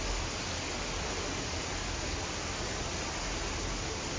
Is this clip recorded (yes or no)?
yes